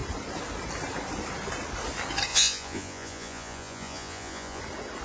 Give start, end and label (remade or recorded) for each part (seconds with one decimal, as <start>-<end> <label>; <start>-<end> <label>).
0.0-2.3 recorded; 2.3-4.6 remade; 4.6-5.0 recorded